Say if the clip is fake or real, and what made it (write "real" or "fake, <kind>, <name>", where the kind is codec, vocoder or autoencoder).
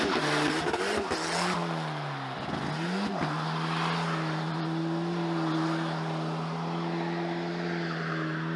real